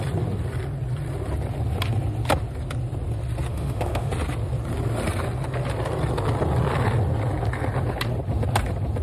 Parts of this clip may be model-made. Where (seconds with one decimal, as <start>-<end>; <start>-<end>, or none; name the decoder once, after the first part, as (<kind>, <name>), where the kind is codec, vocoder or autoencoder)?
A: 3.5-4.1 (autoencoder, DAC-VAE)